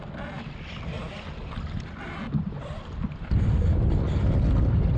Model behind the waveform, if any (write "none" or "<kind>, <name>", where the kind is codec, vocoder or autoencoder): none